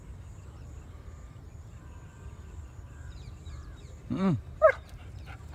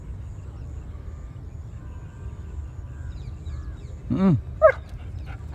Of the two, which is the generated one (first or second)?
first